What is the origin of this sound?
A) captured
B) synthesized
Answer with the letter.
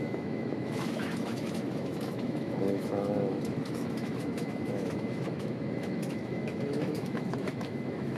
B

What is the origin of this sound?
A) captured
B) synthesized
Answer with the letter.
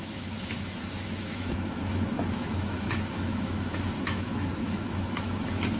B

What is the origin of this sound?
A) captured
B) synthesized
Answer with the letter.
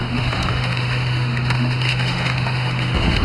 B